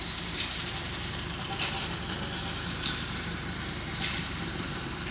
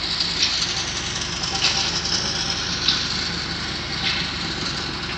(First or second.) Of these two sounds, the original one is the second